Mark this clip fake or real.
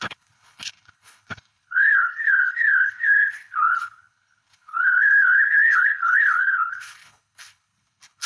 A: fake